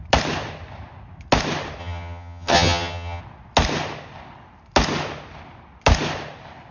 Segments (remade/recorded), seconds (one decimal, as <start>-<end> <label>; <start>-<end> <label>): 0.0-1.8 recorded; 1.8-3.2 remade; 3.2-6.7 recorded